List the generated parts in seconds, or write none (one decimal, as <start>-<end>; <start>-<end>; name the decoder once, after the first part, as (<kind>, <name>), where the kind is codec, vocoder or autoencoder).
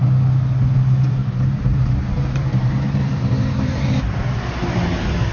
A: 1.2-3.8 (vocoder, BigVGAN v2)